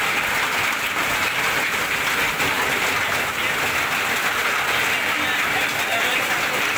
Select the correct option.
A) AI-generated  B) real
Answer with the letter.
B